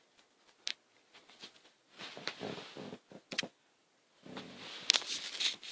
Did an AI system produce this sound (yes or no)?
no